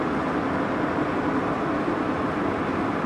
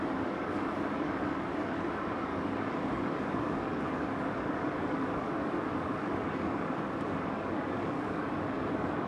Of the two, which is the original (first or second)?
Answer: first